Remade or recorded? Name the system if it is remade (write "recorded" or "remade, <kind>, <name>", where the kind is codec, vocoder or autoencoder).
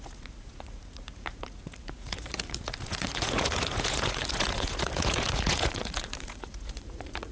remade, vocoder, Vocos